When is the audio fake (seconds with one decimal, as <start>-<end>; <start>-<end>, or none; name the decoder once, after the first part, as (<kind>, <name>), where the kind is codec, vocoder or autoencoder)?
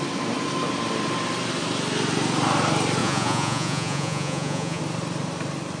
3.0-4.8 (vocoder, Vocos)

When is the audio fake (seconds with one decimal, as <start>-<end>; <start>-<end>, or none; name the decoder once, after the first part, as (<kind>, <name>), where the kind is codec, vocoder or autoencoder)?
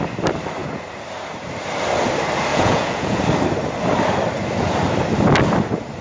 2.5-3.2 (vocoder, Vocos)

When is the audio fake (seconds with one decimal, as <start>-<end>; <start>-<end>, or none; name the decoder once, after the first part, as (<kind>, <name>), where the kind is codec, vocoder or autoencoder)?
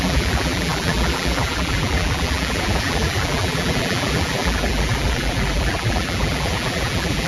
0.0-7.3 (vocoder, BigVGAN v2)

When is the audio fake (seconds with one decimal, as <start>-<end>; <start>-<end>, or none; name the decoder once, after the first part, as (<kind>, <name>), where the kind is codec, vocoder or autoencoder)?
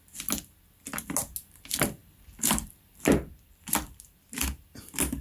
2.0-4.2 (vocoder, BigVGAN v2)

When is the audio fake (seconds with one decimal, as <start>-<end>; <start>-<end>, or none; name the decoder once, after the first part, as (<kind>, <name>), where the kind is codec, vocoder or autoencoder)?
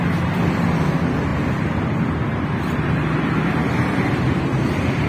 none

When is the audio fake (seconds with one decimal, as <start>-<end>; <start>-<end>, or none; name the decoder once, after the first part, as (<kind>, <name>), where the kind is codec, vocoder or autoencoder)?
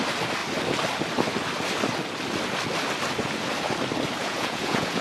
4.2-5.0 (vocoder, Vocos)